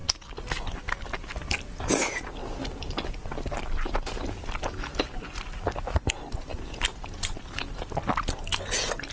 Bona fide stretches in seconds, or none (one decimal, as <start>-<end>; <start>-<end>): 0.0-6.5; 7.3-9.1